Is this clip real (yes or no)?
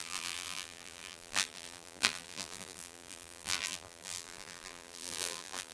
no